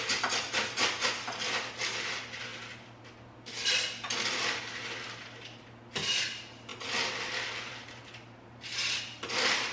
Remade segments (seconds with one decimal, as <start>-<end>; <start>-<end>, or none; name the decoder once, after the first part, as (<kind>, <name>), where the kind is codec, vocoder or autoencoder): none